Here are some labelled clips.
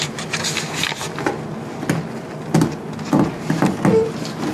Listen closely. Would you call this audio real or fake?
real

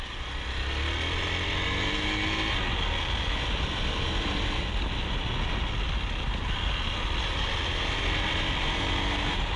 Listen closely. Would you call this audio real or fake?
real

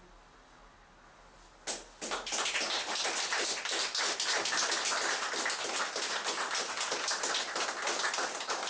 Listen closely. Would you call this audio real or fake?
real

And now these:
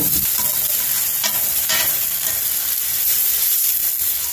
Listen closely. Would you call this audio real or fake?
real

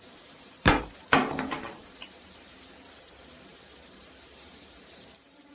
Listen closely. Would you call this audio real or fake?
fake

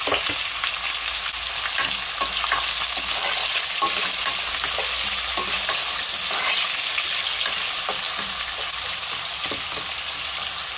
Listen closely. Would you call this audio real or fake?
real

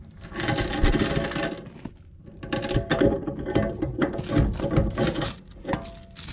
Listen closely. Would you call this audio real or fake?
real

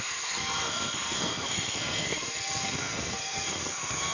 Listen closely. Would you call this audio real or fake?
fake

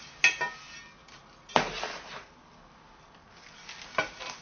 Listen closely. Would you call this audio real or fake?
real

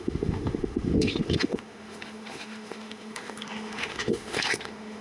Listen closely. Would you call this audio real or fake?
fake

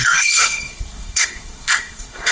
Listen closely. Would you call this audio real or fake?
fake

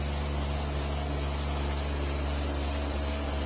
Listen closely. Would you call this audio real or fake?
real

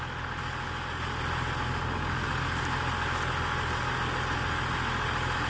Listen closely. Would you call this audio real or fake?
real